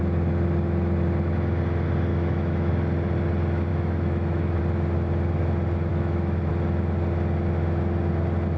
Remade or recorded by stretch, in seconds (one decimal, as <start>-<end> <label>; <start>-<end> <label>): 0.0-2.1 recorded; 2.1-2.7 remade; 2.7-3.7 recorded; 3.7-4.6 remade; 4.6-5.9 recorded; 5.9-6.5 remade; 6.5-8.6 recorded